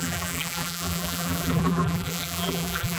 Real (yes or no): no